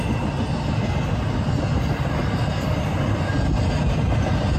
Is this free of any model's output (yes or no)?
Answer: yes